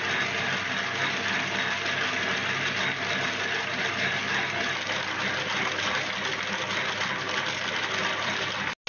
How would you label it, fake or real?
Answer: real